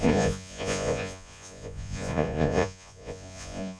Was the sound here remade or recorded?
remade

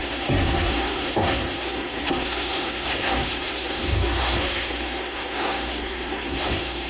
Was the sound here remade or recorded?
remade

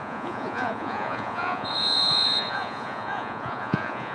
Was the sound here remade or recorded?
remade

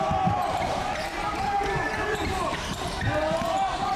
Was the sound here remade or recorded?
remade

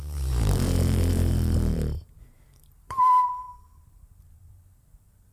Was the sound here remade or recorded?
remade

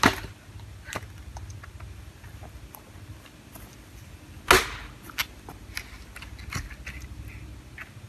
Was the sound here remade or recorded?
recorded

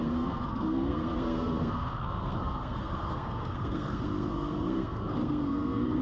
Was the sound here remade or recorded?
remade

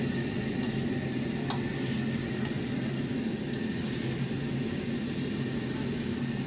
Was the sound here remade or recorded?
recorded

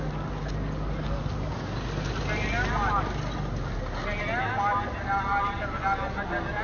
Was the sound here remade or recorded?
recorded